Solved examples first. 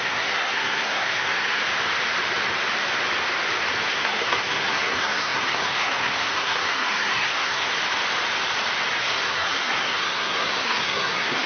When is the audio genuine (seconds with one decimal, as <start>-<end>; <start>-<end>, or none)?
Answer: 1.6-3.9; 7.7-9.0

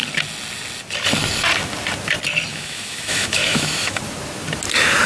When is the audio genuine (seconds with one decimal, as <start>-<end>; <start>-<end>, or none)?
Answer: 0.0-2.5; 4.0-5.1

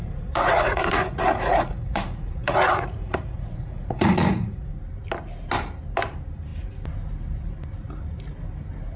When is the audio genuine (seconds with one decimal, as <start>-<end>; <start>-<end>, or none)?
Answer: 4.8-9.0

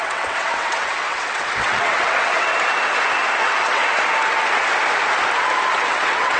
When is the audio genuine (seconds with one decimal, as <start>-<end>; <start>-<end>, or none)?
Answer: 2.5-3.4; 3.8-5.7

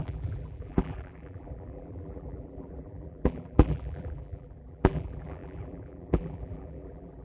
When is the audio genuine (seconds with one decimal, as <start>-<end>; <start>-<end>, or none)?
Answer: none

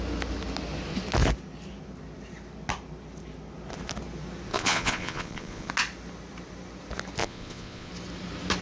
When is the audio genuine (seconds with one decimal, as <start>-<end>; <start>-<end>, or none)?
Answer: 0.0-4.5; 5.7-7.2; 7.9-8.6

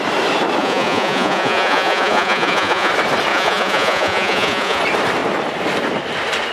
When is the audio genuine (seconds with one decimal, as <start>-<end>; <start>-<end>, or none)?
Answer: 0.0-0.6; 2.9-3.3; 4.8-6.5

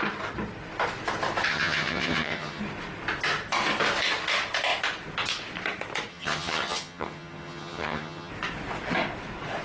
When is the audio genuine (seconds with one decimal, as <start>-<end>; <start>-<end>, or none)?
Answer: 0.0-1.5; 2.6-6.1; 8.3-9.6